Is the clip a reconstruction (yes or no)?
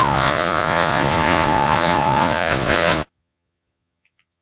yes